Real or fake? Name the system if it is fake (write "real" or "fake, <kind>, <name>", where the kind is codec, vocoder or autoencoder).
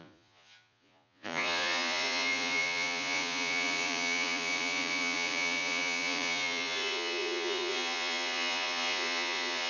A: fake, vocoder, Vocos